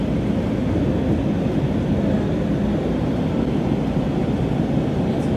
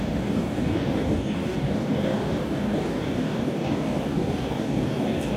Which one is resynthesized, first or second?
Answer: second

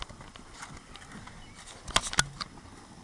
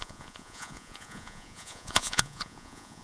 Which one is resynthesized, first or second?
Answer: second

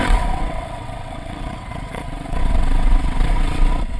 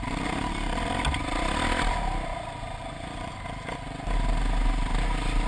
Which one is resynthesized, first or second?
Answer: first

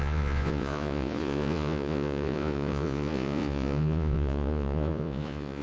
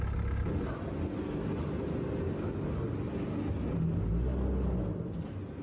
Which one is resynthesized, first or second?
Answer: first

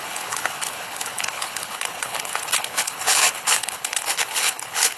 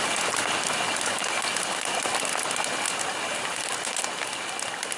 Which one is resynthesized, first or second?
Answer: first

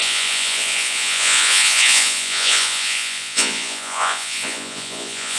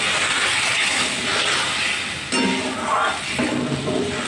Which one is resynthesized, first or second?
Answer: first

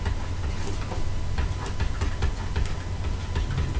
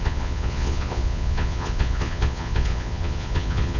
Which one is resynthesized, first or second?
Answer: second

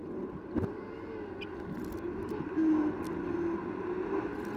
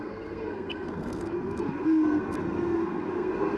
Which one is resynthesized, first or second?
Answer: second